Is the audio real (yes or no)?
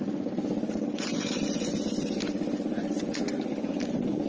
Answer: yes